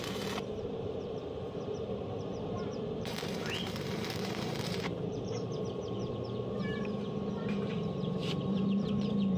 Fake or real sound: fake